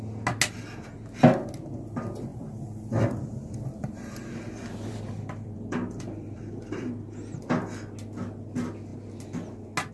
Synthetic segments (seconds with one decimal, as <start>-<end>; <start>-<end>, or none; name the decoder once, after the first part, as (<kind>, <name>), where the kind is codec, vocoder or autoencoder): 2.3-6.9 (vocoder, BigVGAN v2)